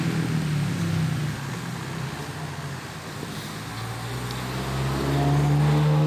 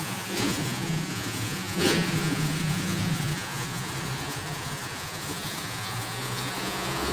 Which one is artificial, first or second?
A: second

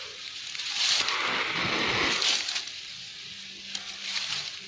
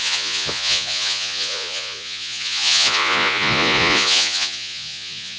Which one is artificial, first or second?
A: second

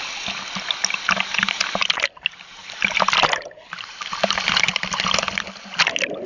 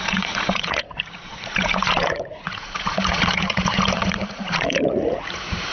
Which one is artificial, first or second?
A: second